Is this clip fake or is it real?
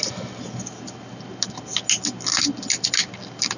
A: real